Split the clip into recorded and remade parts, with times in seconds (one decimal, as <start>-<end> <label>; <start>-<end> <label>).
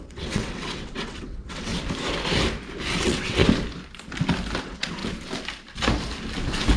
0.0-1.7 remade; 1.7-3.0 recorded; 3.0-3.4 remade; 3.4-4.6 recorded; 4.6-5.0 remade; 5.0-6.8 recorded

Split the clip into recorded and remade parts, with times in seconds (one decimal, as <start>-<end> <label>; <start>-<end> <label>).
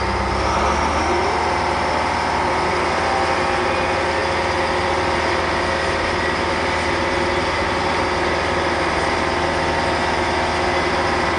0.0-11.4 recorded